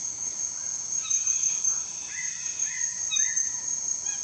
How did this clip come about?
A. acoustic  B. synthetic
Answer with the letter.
A